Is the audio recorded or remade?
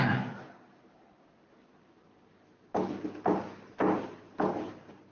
recorded